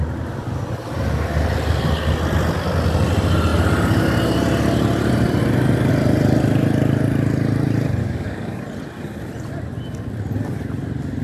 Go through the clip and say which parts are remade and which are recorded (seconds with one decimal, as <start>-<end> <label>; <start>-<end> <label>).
0.0-8.0 recorded; 8.0-8.6 remade; 8.6-11.2 recorded